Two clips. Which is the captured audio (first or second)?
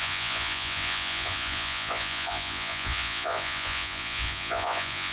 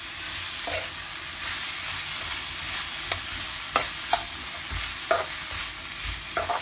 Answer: second